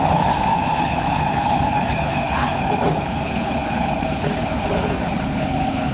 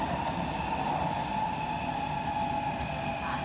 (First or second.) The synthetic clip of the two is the first